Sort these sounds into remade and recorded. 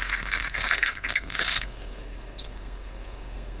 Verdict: remade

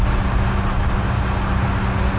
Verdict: recorded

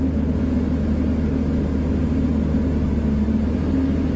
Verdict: recorded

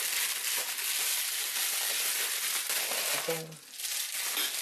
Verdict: recorded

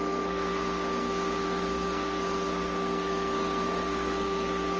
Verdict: remade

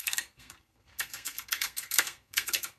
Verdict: remade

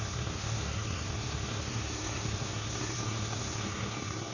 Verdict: remade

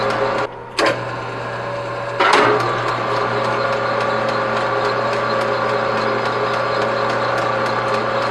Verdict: recorded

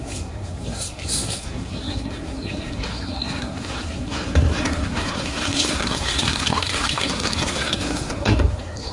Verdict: remade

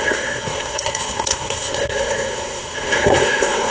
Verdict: remade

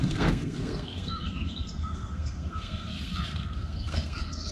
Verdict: remade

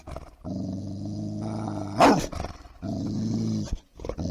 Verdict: recorded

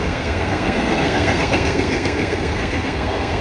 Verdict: remade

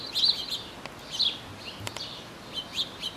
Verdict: recorded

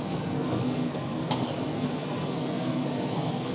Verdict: remade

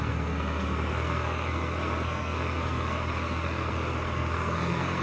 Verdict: remade